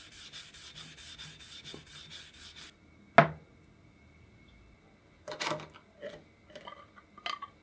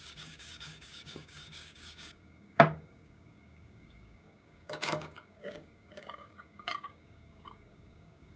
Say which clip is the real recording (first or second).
first